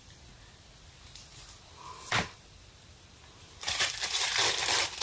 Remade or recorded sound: remade